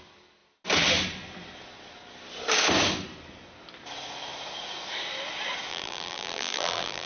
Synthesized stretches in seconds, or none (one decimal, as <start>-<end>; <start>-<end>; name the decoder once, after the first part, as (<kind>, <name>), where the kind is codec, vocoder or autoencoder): 5.7-7.1 (vocoder, BigVGAN v2)